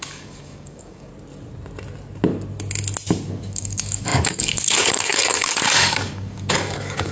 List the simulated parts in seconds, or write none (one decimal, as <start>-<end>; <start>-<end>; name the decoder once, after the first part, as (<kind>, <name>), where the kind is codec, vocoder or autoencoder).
0.0-1.1 (codec, DAC); 3.3-7.1